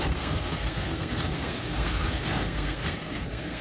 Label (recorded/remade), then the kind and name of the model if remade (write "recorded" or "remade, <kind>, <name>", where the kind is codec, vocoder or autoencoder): remade, codec, SNAC